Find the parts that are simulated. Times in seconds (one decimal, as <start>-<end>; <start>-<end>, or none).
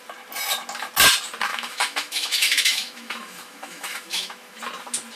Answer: 1.5-4.6